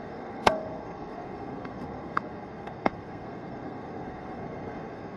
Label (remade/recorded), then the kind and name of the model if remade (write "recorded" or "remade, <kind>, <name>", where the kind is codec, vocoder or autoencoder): remade, codec, SNAC